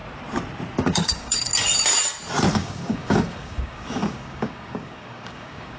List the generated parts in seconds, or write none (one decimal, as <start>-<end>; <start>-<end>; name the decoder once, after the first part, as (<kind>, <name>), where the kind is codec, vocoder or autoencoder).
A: 0.8-1.5 (codec, DAC); 2.5-5.8